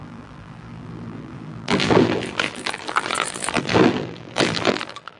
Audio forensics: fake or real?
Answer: fake